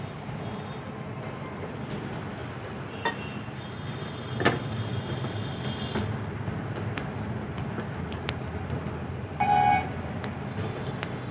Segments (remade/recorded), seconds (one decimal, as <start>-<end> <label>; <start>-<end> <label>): 0.0-11.3 recorded

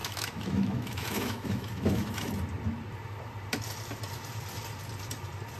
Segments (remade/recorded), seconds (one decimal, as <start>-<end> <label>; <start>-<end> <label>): 0.0-2.3 remade; 2.3-5.6 recorded

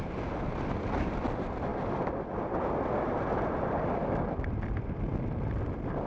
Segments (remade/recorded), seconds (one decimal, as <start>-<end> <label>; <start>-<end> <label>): 0.0-6.1 recorded

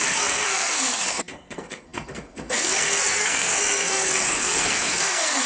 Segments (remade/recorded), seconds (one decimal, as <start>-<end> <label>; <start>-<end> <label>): 0.0-5.5 remade

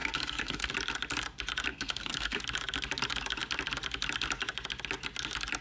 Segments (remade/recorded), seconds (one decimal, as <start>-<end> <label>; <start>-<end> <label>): 0.0-0.7 remade; 0.7-1.7 recorded; 1.7-2.4 remade; 2.4-5.6 recorded

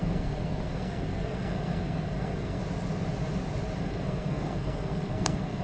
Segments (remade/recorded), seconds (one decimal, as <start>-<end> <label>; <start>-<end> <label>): 0.0-2.6 remade; 2.6-3.8 recorded; 3.8-5.6 remade

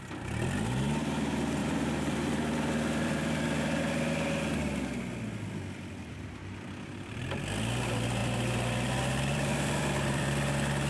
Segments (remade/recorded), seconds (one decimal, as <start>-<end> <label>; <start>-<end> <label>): 0.0-1.6 recorded; 1.6-3.8 remade; 3.8-8.2 recorded; 8.2-10.9 remade

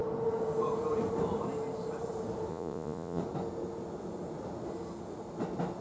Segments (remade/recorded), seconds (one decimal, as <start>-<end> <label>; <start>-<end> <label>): 0.0-2.5 recorded; 2.5-3.2 remade; 3.2-5.8 recorded